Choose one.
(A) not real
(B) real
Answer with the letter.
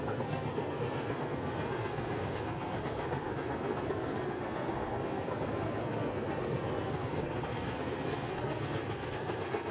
A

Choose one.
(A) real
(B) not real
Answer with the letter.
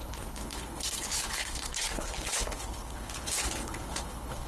B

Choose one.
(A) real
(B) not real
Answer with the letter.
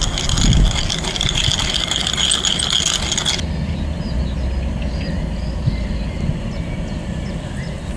A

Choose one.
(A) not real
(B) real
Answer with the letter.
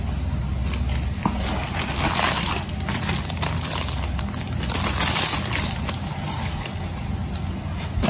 B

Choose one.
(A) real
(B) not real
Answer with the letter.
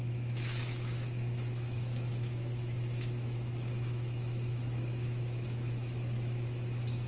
B